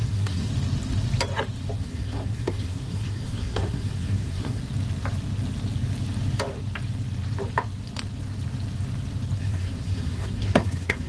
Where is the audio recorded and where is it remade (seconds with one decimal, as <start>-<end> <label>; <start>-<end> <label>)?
0.0-0.5 remade; 0.5-1.8 recorded; 1.8-4.6 remade; 4.6-9.4 recorded; 9.4-11.1 remade